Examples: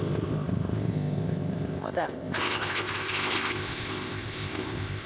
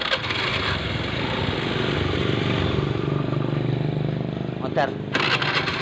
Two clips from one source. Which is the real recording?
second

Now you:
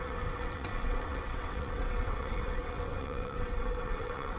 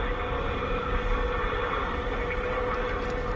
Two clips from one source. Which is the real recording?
second